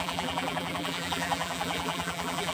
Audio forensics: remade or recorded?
remade